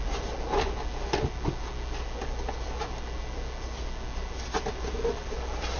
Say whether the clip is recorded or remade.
recorded